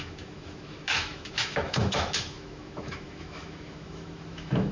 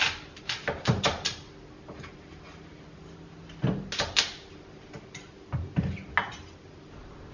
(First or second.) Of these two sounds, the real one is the second